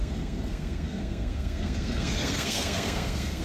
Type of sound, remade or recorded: remade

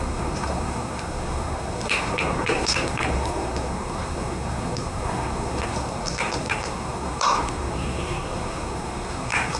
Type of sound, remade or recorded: remade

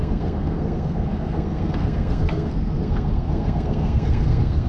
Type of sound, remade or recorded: remade